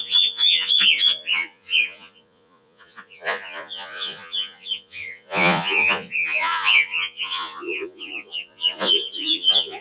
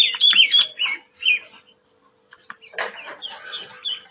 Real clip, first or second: second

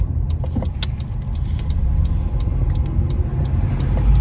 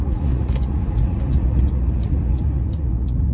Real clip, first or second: first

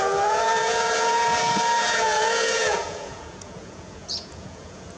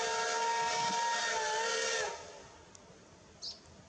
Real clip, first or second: second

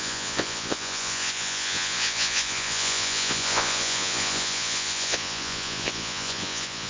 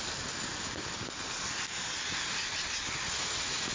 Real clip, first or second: second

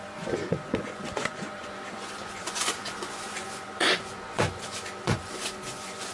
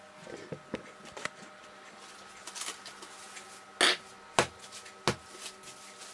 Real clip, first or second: second